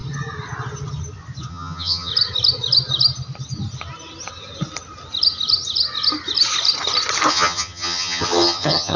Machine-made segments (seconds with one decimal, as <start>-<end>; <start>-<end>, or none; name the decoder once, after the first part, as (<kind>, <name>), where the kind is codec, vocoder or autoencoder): 1.5-2.1 (vocoder, HiFi-GAN); 7.3-9.0